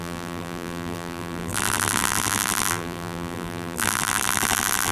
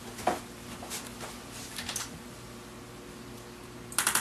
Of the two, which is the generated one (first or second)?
first